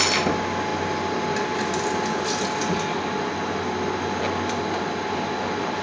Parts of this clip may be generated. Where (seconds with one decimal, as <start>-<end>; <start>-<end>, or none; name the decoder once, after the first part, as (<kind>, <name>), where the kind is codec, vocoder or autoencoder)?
none